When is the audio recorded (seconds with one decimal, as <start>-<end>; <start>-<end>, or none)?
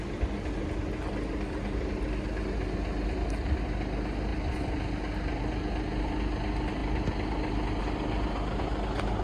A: 0.0-9.2